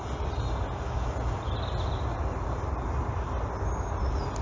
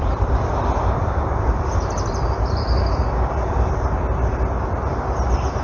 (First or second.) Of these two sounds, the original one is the first